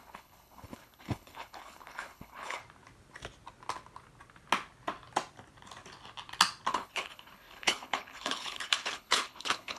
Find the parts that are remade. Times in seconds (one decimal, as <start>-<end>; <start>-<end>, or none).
0.0-2.6; 6.7-9.8